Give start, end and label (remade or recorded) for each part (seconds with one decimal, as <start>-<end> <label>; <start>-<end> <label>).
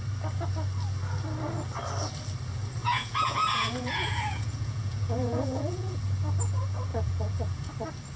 0.0-2.8 recorded; 2.8-6.0 remade; 6.0-6.9 recorded; 6.9-7.7 remade; 7.7-8.2 recorded